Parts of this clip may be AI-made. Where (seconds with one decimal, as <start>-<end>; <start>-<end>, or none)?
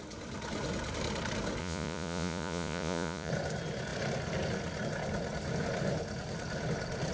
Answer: 1.6-3.3